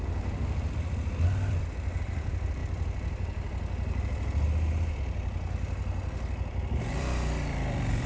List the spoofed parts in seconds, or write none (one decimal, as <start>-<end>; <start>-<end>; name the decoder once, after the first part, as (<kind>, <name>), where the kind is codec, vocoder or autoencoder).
0.0-2.6 (vocoder, BigVGAN v2); 6.8-8.1